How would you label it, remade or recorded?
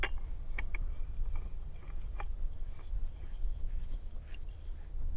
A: recorded